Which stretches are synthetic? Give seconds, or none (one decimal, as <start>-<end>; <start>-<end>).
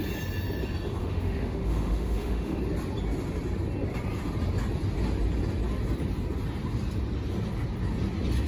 1.0-2.6